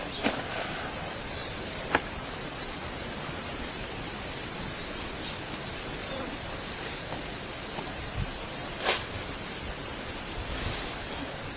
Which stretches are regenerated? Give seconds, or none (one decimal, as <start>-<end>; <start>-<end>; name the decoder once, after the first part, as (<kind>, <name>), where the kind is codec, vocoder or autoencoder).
3.4-4.5 (vocoder, BigVGAN v2)